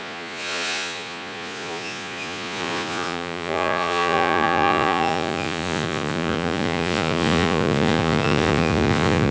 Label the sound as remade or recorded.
remade